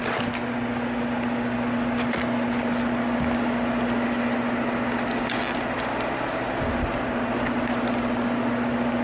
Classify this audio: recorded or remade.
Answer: recorded